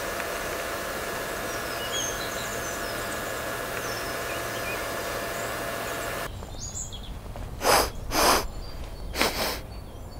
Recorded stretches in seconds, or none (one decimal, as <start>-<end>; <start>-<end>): 0.0-10.2